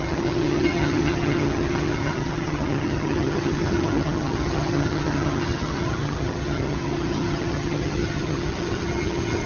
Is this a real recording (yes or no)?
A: no